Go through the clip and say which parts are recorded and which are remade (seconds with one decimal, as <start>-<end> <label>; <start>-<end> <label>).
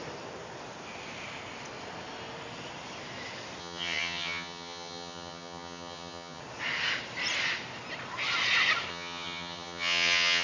0.0-3.6 recorded; 3.6-6.4 remade; 6.4-8.9 recorded; 8.9-10.4 remade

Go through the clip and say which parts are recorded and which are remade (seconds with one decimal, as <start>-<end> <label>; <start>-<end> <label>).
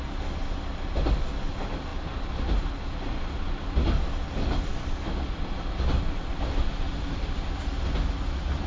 0.0-8.7 recorded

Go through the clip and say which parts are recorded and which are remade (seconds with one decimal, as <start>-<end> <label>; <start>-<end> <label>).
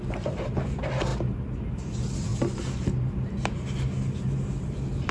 0.0-5.1 recorded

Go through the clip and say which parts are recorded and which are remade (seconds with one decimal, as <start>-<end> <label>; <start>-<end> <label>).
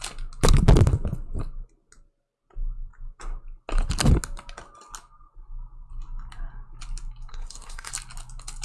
0.0-7.3 recorded; 7.3-7.9 remade; 7.9-8.6 recorded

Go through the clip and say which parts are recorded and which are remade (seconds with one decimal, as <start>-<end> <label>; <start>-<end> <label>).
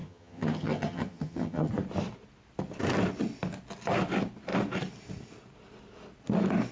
0.0-1.7 remade; 1.7-6.7 recorded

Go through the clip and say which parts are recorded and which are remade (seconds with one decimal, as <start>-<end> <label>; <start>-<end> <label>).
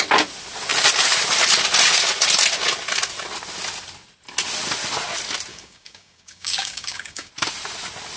0.0-5.5 recorded; 5.5-7.3 remade; 7.3-8.2 recorded